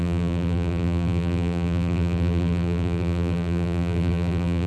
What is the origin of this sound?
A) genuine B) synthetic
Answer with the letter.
B